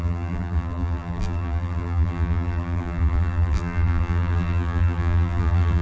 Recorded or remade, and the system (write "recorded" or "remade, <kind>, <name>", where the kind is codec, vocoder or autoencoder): remade, vocoder, BigVGAN v2